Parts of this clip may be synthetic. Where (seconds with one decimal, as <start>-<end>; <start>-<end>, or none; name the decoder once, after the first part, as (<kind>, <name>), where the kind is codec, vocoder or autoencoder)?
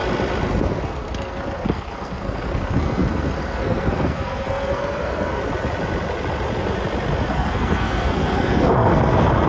0.6-5.4 (codec, SNAC); 7.3-9.5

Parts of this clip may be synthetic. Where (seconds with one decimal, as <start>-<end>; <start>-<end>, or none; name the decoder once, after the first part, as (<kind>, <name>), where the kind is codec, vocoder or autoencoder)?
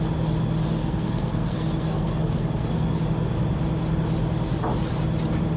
0.8-3.0 (codec, SNAC)